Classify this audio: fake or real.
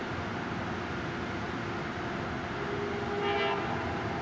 real